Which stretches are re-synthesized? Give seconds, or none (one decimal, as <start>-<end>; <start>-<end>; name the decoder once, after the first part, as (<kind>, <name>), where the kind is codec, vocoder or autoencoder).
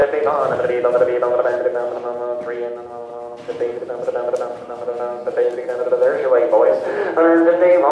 none